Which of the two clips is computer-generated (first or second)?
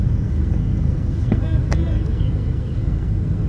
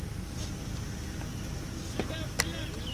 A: first